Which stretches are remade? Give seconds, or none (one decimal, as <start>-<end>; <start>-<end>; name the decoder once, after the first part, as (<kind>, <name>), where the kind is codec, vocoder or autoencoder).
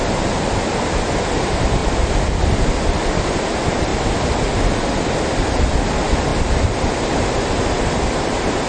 1.8-3.5 (vocoder, BigVGAN v2); 6.3-7.1